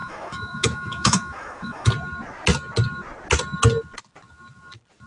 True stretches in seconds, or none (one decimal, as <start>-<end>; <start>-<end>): 1.9-5.1